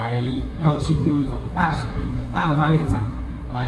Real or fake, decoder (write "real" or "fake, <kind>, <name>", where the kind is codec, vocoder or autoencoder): fake, codec, SNAC